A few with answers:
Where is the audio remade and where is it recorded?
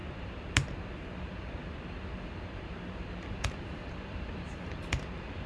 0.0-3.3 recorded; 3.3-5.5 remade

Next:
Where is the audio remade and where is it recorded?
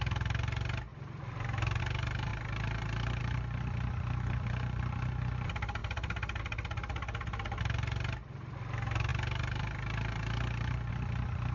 0.0-0.9 recorded; 0.9-1.8 remade; 1.8-2.3 recorded; 2.3-3.2 remade; 3.2-5.8 recorded; 5.8-6.4 remade; 6.4-11.5 recorded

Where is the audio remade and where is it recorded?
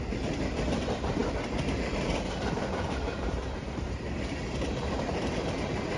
0.0-6.0 remade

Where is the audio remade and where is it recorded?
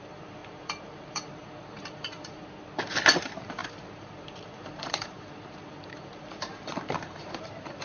0.0-2.4 remade; 2.4-3.2 recorded; 3.2-7.8 remade